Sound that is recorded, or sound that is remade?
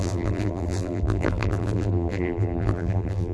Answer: remade